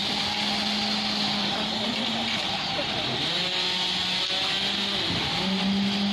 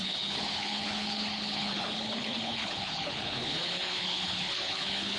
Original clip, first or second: first